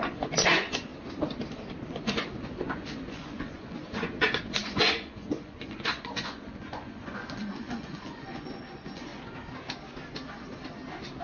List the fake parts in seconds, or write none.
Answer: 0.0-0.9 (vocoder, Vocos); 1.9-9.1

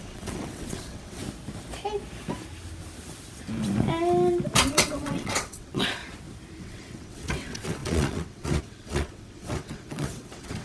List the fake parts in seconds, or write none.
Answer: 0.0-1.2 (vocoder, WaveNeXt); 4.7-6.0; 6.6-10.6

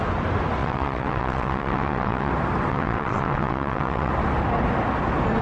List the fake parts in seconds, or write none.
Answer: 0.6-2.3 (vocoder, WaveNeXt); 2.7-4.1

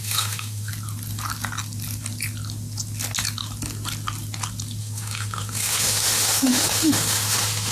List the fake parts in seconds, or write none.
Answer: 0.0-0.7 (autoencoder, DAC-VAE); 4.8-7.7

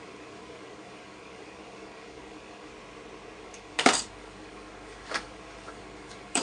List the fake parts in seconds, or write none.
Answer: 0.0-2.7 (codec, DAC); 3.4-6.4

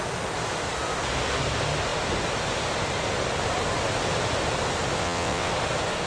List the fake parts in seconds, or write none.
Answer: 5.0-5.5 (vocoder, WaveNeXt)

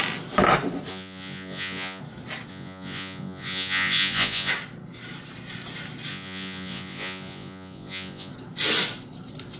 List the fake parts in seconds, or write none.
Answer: 0.9-2.0 (vocoder, Vocos); 2.5-4.5; 6.1-8.3